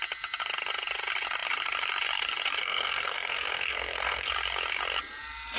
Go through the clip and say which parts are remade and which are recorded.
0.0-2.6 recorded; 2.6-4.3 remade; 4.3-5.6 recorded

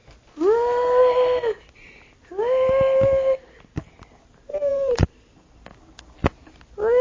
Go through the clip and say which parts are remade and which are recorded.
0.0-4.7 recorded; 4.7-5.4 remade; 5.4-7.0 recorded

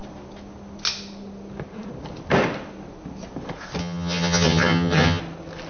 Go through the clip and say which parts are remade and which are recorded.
0.0-3.8 recorded; 3.8-5.2 remade; 5.2-5.7 recorded